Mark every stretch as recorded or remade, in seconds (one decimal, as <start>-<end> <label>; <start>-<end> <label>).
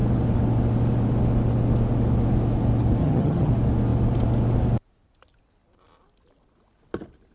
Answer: 0.0-3.0 recorded; 3.0-3.5 remade; 3.5-7.3 recorded